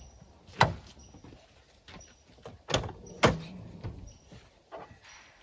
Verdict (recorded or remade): recorded